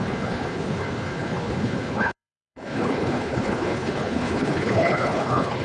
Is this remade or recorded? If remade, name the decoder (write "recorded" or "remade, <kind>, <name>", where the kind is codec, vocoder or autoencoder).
remade, codec, HILCodec